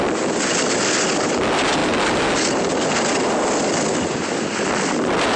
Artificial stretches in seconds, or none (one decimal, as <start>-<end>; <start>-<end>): none